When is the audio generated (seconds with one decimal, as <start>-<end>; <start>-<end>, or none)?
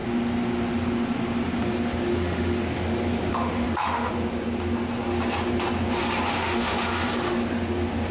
2.1-2.6; 3.3-4.1; 6.3-7.1